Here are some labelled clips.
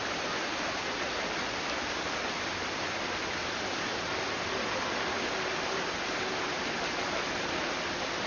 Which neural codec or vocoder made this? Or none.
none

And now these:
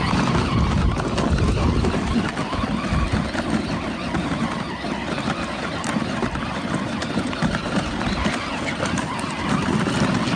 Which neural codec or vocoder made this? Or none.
none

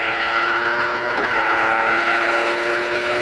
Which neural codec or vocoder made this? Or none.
codec, HILCodec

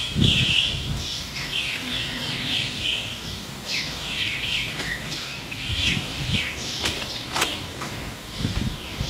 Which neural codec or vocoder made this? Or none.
codec, DAC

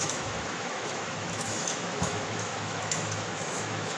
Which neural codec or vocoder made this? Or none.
autoencoder, DAC-VAE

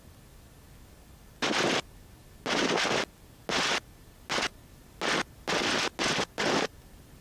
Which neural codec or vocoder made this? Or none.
none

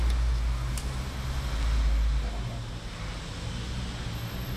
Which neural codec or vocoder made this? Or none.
none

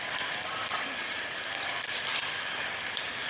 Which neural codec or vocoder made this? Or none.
vocoder, BigVGAN v2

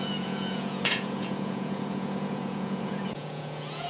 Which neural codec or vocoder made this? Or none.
vocoder, Vocos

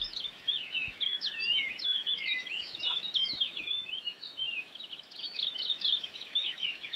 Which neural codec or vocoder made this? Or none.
autoencoder, DAC-VAE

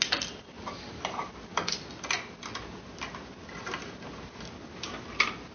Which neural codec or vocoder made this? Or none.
none